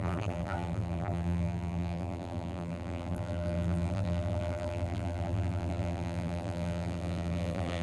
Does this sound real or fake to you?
fake